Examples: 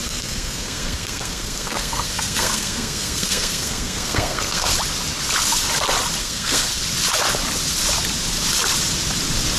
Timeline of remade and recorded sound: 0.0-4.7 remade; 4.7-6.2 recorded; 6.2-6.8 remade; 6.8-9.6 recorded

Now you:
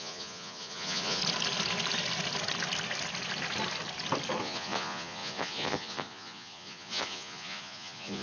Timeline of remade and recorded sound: 0.0-1.2 remade; 1.2-4.4 recorded; 4.4-8.2 remade

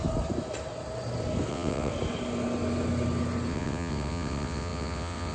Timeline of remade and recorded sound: 0.0-1.5 recorded; 1.5-1.9 remade; 1.9-3.5 recorded; 3.5-5.3 remade

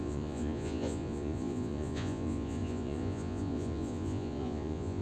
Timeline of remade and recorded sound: 0.0-5.0 remade

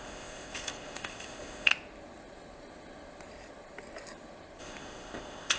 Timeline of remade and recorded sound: 0.0-1.7 remade; 1.7-4.6 recorded; 4.6-5.6 remade

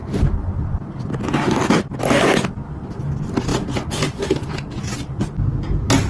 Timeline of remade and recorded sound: 0.0-6.1 recorded

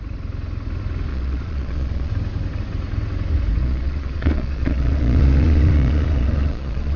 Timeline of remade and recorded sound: 0.0-1.1 recorded; 1.1-2.1 remade; 2.1-3.6 recorded; 3.6-7.0 remade